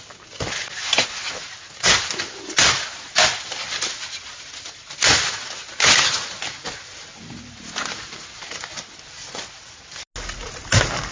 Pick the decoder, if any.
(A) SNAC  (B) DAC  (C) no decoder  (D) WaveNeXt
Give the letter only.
C